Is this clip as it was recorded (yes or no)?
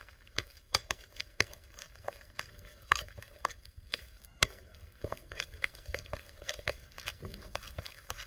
no